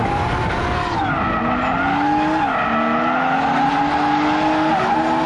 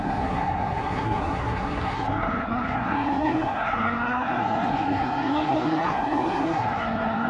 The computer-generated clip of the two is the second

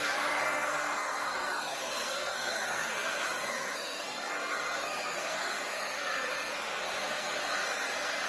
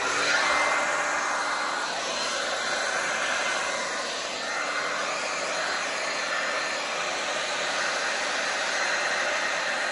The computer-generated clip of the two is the first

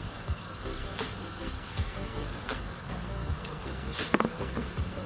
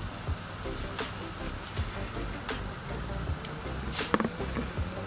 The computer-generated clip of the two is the first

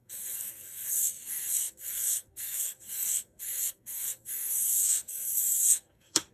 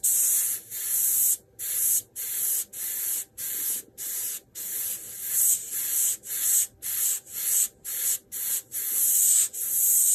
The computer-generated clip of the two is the first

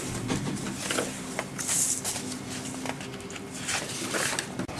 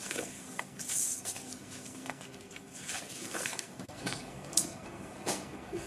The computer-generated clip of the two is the second